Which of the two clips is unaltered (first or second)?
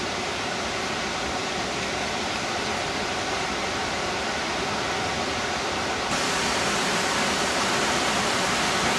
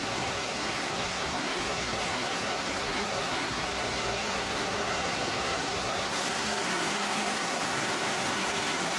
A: first